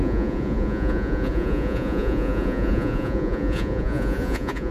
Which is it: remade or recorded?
remade